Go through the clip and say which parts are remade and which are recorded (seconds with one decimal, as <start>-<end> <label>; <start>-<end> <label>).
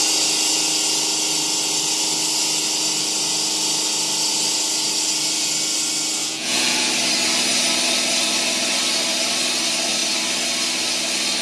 0.0-6.2 recorded; 6.2-6.9 remade; 6.9-11.4 recorded